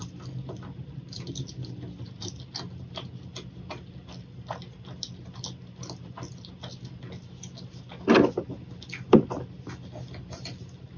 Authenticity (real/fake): real